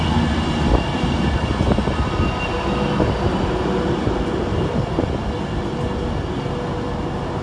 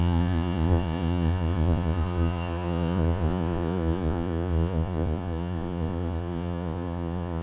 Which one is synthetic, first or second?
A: second